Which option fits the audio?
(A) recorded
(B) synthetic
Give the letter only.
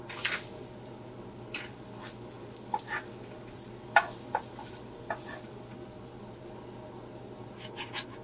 A